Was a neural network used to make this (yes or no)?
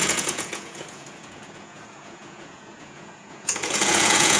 yes